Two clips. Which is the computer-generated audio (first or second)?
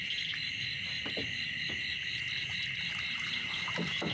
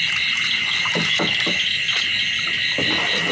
first